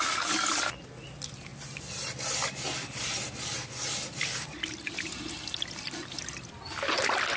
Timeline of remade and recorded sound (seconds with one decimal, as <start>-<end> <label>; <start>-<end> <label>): 0.0-7.4 recorded